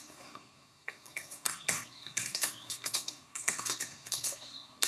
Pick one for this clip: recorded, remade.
remade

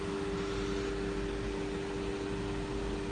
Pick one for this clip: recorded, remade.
recorded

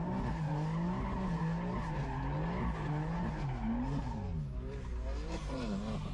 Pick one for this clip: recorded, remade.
recorded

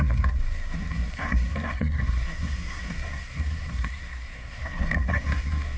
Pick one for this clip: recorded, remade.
remade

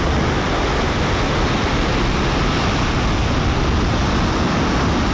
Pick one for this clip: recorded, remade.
recorded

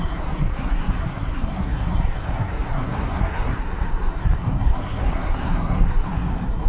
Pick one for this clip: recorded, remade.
remade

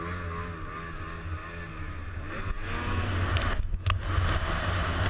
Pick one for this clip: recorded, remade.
recorded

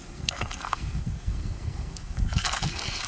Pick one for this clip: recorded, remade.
remade